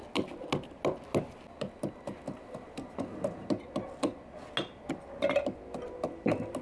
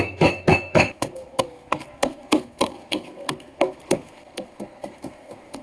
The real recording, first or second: first